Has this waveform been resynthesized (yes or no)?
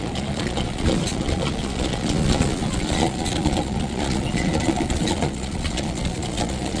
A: yes